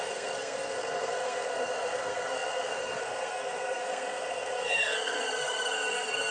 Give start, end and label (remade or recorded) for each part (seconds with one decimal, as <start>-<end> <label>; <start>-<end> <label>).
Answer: 0.0-6.3 remade